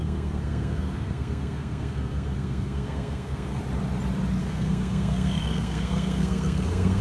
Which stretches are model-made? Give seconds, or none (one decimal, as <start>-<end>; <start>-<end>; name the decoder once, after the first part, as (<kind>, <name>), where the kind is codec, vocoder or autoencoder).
0.0-3.6 (codec, SNAC); 4.4-7.0